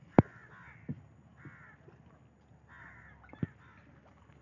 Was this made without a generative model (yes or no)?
yes